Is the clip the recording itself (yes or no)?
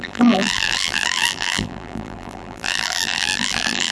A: no